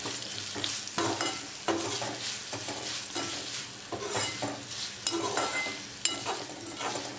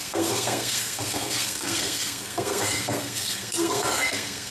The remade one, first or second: second